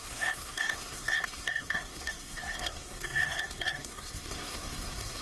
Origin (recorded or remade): remade